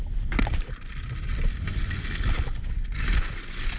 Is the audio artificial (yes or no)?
no